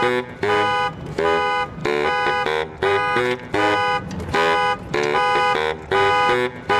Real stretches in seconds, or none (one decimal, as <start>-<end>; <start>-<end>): 0.0-6.8